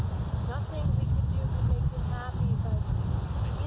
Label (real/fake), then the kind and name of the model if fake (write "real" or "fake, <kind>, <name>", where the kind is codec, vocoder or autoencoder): real